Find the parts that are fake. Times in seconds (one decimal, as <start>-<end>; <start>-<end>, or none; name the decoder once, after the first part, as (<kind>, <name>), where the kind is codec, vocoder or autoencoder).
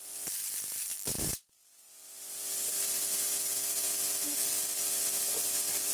none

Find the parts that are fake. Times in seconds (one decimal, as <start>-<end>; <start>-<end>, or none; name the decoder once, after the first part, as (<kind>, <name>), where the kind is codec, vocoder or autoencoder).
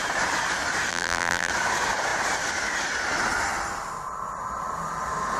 0.9-1.5 (vocoder, BigVGAN v2)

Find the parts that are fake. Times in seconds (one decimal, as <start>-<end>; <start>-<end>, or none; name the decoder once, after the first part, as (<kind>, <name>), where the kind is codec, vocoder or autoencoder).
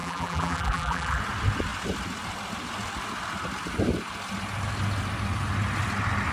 0.0-1.2 (vocoder, BigVGAN v2)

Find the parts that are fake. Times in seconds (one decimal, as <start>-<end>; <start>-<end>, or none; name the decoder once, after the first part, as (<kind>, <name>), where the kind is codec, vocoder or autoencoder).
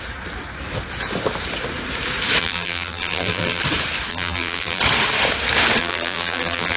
2.4-3.6 (vocoder, BigVGAN v2); 4.1-4.8; 5.8-6.8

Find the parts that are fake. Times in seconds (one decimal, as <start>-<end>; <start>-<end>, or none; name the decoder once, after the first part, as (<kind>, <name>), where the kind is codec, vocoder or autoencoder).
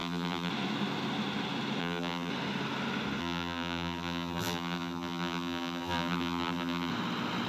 0.0-0.5 (vocoder, BigVGAN v2); 1.8-2.3; 3.2-6.9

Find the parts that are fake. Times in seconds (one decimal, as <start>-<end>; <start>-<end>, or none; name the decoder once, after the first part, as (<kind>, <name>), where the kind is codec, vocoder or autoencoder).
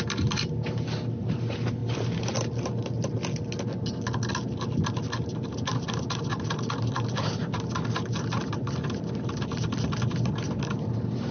none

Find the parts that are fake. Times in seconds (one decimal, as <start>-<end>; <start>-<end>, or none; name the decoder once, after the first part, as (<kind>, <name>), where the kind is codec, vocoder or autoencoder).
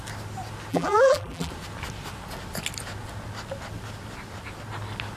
0.7-1.5 (vocoder, BigVGAN v2)